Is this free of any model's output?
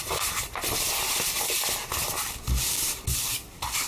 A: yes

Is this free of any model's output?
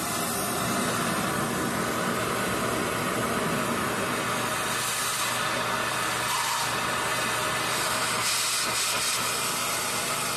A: yes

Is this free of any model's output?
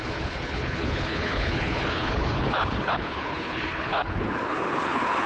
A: no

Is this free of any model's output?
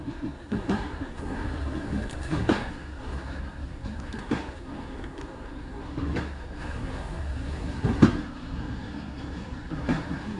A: no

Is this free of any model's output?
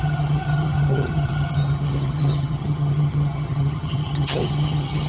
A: no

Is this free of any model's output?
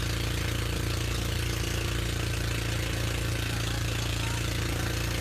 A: yes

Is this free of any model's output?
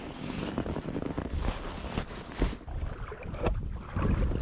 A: yes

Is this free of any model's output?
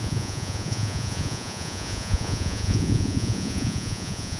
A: no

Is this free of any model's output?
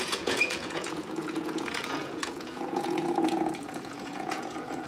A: no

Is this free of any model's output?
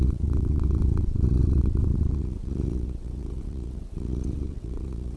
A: no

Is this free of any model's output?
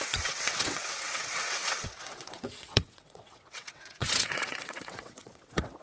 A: no